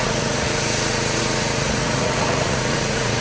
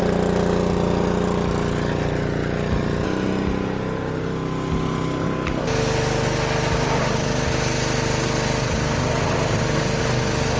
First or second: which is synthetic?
first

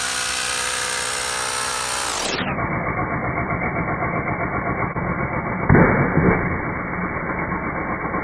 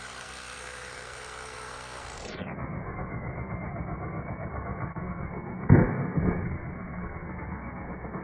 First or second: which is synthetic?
second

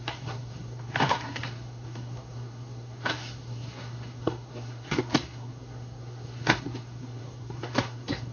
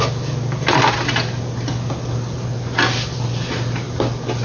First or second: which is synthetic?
first